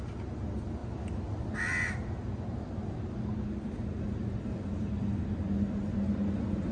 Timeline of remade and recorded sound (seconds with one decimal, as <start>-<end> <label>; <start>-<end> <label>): 0.0-6.7 recorded